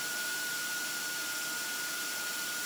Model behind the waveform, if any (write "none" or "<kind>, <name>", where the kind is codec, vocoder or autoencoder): vocoder, BigVGAN v2